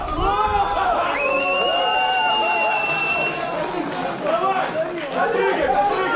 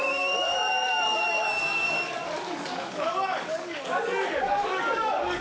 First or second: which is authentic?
first